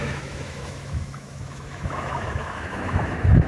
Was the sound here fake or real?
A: fake